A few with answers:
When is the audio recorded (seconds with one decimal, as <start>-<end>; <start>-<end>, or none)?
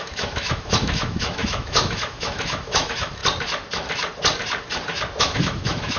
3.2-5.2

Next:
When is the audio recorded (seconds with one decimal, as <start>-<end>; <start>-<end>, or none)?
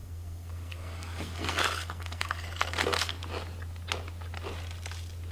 3.2-5.3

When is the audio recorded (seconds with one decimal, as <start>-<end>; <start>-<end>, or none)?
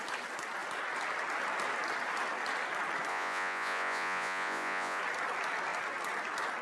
0.0-3.1; 5.0-6.6